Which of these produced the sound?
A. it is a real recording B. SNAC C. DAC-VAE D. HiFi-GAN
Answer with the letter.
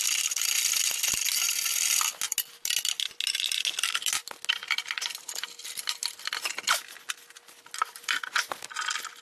A